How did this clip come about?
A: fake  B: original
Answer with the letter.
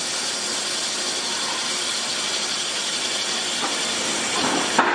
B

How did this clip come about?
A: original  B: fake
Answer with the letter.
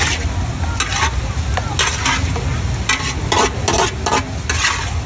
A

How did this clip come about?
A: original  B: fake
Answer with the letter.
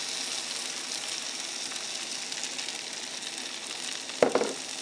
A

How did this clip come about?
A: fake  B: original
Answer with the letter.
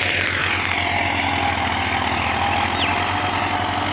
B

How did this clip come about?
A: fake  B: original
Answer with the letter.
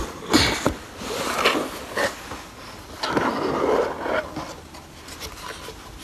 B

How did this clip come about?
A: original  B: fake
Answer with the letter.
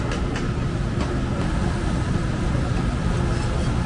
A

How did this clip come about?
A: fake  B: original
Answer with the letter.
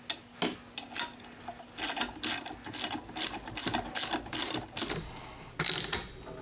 B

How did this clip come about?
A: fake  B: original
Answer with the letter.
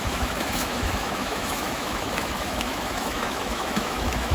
A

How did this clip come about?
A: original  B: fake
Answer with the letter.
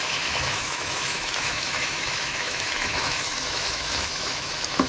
B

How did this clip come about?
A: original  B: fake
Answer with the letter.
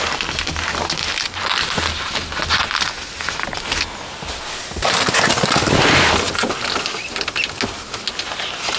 A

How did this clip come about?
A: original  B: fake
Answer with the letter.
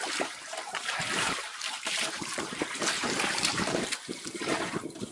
B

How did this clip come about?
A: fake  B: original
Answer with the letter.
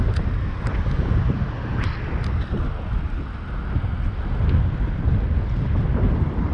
B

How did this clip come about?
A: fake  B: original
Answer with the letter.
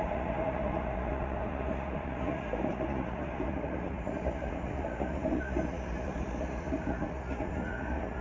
A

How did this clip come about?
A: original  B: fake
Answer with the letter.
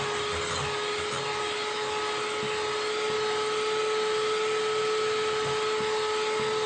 A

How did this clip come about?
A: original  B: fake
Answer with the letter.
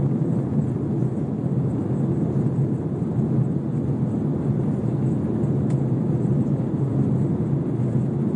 A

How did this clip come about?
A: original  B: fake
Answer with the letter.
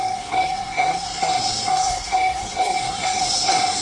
B